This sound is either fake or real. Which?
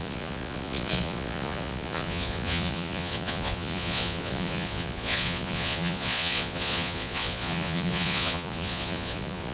fake